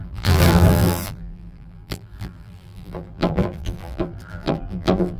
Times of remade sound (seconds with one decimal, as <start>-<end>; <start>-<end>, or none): 0.0-5.2